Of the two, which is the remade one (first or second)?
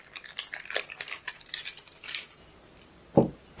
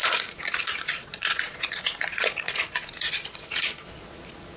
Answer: second